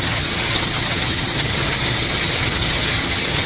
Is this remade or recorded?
remade